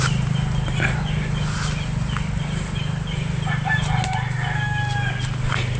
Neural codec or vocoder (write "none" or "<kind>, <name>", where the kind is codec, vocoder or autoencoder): none